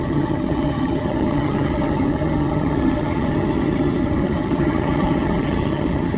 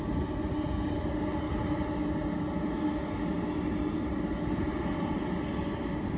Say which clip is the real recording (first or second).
second